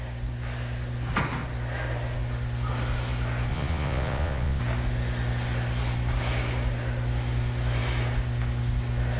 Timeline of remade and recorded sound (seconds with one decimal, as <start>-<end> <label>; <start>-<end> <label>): 0.0-3.5 recorded; 3.5-4.6 remade; 4.6-9.2 recorded